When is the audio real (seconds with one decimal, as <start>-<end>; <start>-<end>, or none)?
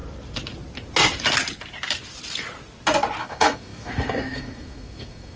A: 0.0-3.2